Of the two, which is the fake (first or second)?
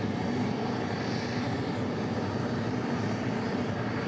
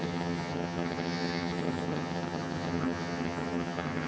second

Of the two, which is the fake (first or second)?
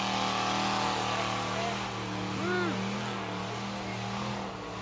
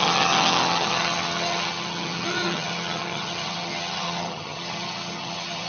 second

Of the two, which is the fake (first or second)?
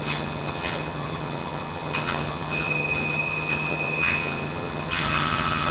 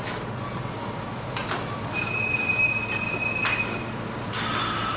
first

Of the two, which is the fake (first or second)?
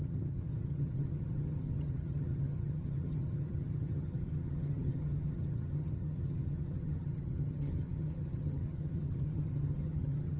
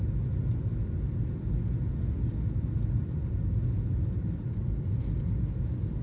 first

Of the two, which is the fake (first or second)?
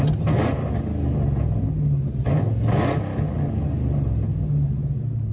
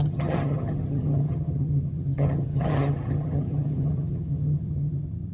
second